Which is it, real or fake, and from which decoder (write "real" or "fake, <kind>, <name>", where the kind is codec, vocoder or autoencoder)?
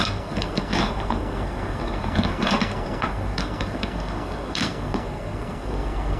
fake, codec, SNAC